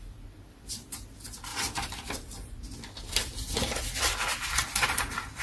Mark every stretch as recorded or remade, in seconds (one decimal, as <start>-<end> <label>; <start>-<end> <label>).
0.0-1.5 recorded; 1.5-2.6 remade; 2.6-5.4 recorded